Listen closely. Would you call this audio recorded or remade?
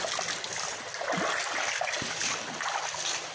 recorded